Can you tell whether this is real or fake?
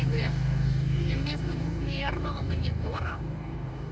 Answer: fake